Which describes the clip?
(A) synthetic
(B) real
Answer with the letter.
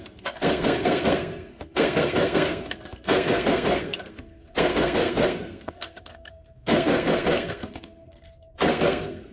A